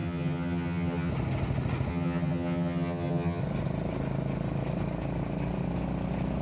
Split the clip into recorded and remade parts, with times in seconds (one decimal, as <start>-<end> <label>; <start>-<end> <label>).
0.0-1.1 remade; 1.1-1.9 recorded; 1.9-3.4 remade; 3.4-6.4 recorded